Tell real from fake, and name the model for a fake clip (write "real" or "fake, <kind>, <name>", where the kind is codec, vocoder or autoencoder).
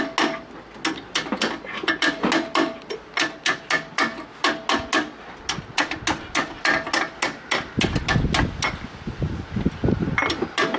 real